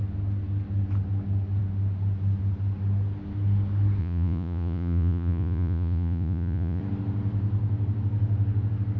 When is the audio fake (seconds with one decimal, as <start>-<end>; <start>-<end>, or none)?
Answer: 4.0-6.8